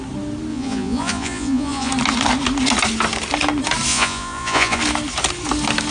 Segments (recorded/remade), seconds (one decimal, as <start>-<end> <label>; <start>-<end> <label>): 0.0-0.5 recorded; 0.5-1.9 remade; 1.9-3.9 recorded; 3.9-4.8 remade; 4.8-5.9 recorded